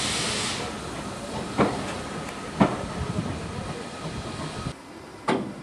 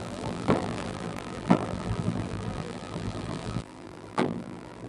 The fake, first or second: second